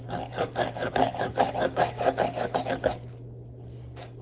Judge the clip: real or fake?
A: fake